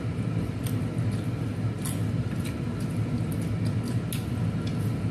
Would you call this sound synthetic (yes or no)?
no